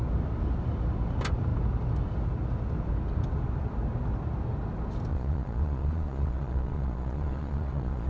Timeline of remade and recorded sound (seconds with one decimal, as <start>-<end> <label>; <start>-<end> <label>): 0.0-5.1 recorded; 5.1-8.1 remade